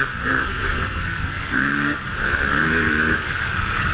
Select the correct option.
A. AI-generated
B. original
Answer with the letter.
A